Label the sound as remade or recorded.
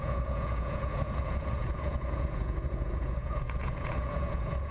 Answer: remade